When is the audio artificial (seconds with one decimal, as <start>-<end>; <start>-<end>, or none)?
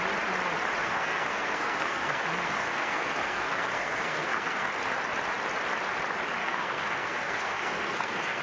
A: 0.8-4.7; 6.4-8.4